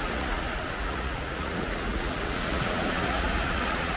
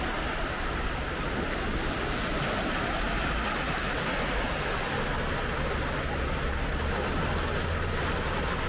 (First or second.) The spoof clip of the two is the first